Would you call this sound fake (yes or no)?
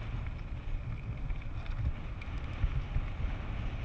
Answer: no